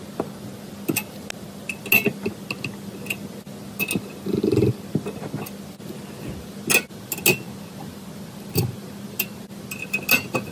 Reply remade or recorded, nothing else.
recorded